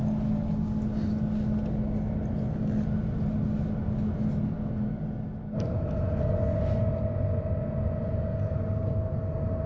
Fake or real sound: real